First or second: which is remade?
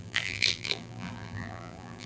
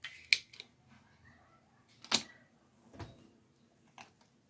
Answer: first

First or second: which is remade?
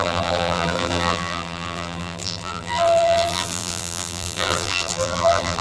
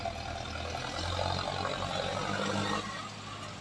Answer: first